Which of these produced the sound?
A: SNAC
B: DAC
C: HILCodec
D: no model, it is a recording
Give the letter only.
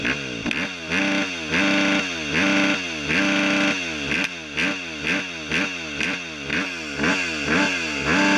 D